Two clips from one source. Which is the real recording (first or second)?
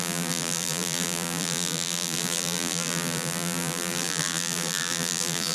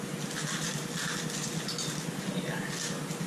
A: second